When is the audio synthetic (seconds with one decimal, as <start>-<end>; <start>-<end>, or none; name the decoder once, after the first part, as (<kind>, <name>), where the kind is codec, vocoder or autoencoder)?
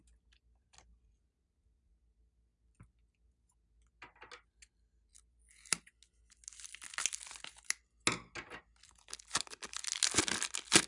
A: none